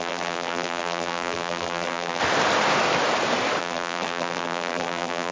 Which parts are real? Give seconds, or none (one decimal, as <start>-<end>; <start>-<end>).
2.2-3.6